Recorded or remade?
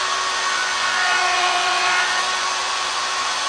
remade